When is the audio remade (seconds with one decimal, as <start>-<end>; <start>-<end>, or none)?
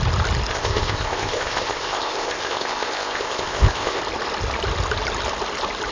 0.5-4.0